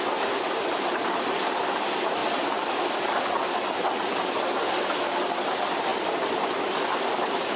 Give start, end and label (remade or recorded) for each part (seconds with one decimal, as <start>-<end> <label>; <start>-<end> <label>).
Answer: 0.0-5.9 recorded; 5.9-6.5 remade; 6.5-7.6 recorded